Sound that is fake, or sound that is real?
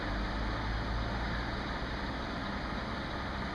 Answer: real